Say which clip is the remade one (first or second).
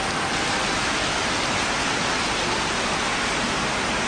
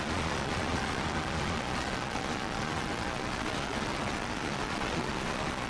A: second